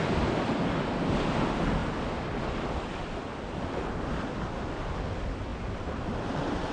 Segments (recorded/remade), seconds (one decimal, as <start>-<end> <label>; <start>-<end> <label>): 0.0-6.7 recorded